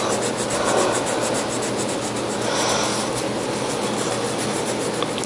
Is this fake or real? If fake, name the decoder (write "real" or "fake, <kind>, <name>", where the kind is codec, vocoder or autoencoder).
real